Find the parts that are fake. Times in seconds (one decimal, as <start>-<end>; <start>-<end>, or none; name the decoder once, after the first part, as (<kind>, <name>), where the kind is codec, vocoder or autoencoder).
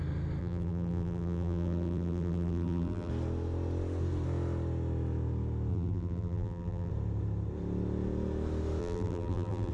0.4-3.1 (vocoder, BigVGAN v2); 5.7-6.9; 8.8-9.7